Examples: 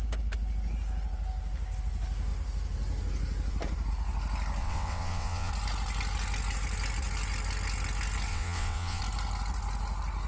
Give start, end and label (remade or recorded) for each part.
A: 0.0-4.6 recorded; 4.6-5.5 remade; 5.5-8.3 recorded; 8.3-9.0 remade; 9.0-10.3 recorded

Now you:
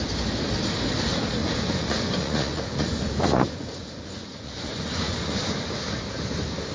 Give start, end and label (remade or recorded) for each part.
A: 0.0-1.4 recorded; 1.4-5.4 remade; 5.4-6.7 recorded

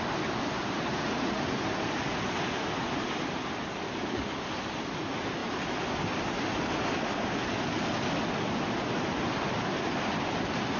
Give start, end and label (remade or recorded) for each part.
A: 0.0-0.9 recorded; 0.9-1.4 remade; 1.4-10.8 recorded

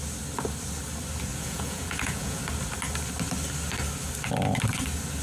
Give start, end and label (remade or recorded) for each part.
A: 0.0-1.3 recorded; 1.3-2.4 remade; 2.4-5.2 recorded

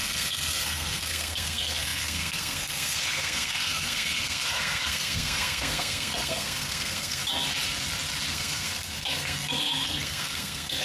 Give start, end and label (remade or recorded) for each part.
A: 0.0-7.2 remade; 7.2-8.3 recorded; 8.3-10.8 remade

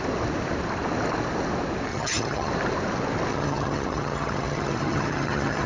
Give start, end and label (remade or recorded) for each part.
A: 0.0-1.9 recorded; 1.9-2.5 remade; 2.5-3.3 recorded; 3.3-5.7 remade